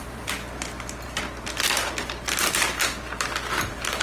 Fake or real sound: fake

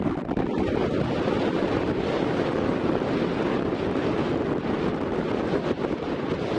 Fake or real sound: real